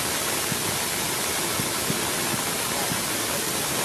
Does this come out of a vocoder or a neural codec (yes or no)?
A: no